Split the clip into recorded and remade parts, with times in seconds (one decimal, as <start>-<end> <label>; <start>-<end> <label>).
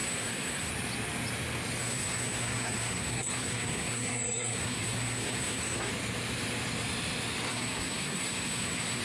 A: 0.0-0.7 remade; 0.7-1.8 recorded; 1.8-5.9 remade; 5.9-7.5 recorded; 7.5-9.0 remade